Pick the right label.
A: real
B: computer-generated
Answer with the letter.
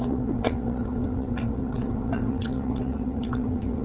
B